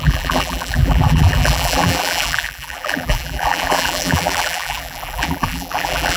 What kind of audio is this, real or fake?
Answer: fake